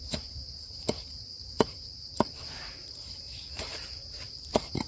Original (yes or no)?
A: no